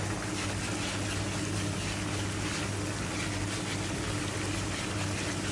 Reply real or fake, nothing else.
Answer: real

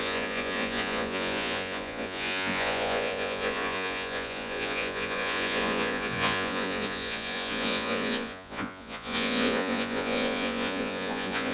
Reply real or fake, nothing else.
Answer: fake